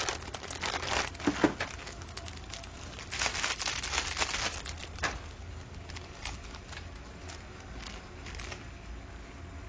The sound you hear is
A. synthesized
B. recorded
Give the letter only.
B